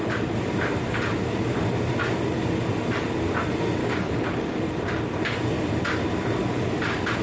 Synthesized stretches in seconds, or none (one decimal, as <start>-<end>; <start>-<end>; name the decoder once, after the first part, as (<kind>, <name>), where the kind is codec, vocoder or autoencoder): 3.8-4.6 (codec, DAC)